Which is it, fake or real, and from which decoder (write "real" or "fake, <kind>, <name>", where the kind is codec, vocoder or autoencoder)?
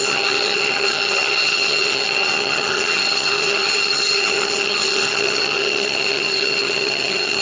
fake, vocoder, HiFi-GAN